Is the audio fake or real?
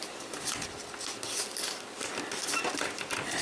real